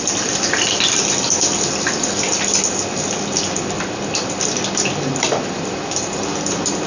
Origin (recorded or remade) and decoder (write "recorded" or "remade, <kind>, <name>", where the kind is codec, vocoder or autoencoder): recorded